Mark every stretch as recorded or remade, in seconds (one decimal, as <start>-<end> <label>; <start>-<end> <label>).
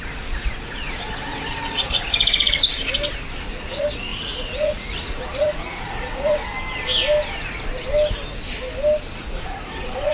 0.0-2.1 remade; 2.1-3.4 recorded; 3.4-6.4 remade; 6.4-9.2 recorded; 9.2-10.1 remade